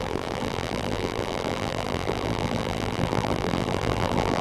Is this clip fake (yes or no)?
yes